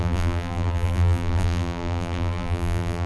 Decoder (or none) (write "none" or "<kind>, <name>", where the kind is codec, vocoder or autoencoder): vocoder, BigVGAN v2